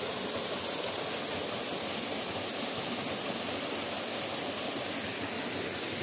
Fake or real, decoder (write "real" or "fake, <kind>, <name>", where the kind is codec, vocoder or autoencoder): real